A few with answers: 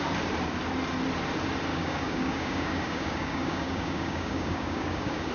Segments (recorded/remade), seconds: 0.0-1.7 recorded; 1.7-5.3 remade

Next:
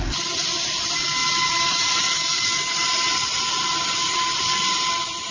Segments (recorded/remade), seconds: 0.0-5.3 recorded

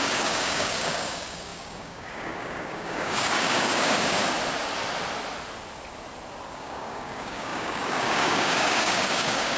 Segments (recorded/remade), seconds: 0.0-4.2 remade; 4.2-6.5 recorded; 6.5-9.6 remade

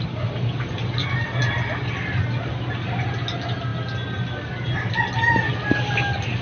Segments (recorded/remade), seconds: 0.0-6.4 recorded

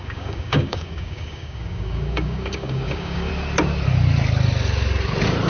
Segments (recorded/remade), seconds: 0.0-3.3 remade; 3.3-5.5 recorded